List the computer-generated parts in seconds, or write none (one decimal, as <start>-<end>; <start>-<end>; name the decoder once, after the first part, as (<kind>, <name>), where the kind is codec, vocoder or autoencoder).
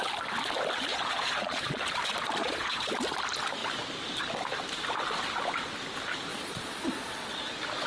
0.9-1.8 (vocoder, Vocos); 2.4-2.9; 6.3-7.5